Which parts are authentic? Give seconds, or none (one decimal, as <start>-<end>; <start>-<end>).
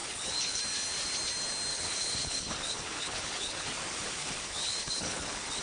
0.6-1.7; 3.7-4.2